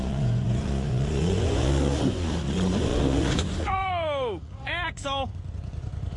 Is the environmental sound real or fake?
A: fake